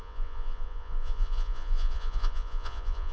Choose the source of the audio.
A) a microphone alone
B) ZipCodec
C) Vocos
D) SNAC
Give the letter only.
C